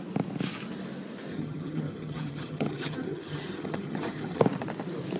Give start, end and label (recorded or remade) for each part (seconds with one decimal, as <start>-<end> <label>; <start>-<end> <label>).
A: 0.0-1.3 recorded; 1.3-4.4 remade; 4.4-5.2 recorded